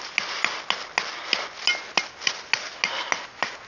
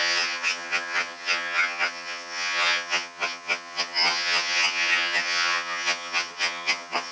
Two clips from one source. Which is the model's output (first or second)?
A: second